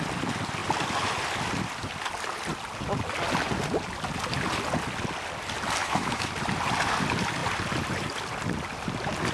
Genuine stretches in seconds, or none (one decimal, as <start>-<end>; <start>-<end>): 0.0-5.8; 6.3-9.3